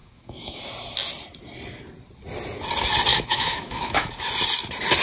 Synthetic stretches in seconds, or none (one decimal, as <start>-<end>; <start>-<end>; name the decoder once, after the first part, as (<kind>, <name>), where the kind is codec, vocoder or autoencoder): 0.0-0.6 (autoencoder, DAC-VAE); 3.1-4.1